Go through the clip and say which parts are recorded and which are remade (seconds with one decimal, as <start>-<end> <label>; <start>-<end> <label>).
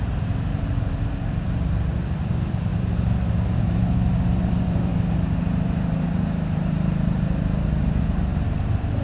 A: 0.0-9.0 remade